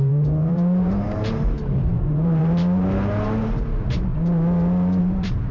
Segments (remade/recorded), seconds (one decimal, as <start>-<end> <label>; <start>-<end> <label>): 0.0-4.1 remade; 4.1-5.0 recorded; 5.0-5.5 remade